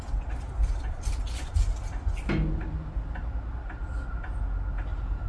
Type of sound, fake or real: real